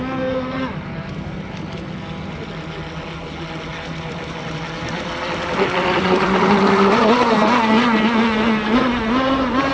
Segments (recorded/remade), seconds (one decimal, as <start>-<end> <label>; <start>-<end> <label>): 0.0-3.7 recorded; 3.7-7.0 remade; 7.0-9.7 recorded